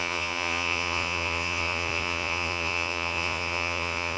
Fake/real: fake